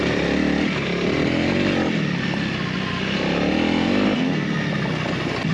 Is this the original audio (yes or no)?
yes